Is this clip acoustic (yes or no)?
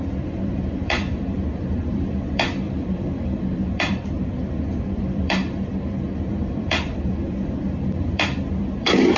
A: no